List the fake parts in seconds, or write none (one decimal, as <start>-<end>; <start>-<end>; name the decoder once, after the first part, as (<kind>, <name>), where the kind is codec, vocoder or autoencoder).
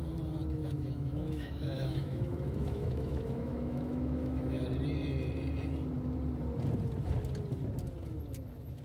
0.6-4.6 (autoencoder, DAC-VAE)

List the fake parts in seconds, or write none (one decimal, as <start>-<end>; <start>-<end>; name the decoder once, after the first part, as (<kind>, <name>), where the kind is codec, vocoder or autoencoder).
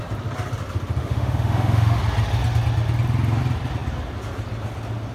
1.0-2.0 (autoencoder, DAC-VAE)